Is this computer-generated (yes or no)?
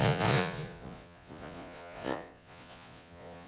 yes